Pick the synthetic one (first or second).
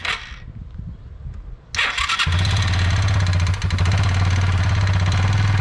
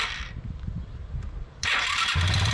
second